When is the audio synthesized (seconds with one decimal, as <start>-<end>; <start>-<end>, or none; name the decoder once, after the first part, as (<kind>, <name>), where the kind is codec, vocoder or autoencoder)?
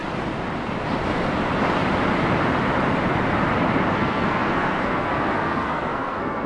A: 3.9-6.5 (codec, SNAC)